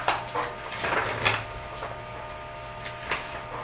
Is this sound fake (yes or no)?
no